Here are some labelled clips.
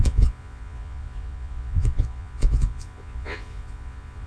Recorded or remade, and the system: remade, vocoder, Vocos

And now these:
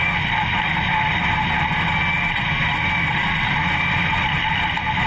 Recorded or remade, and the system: recorded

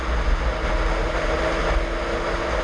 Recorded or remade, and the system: recorded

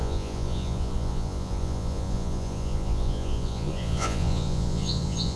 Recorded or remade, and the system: remade, vocoder, Vocos